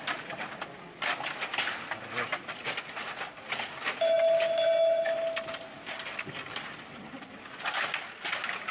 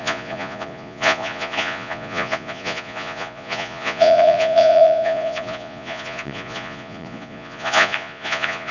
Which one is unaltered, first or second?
first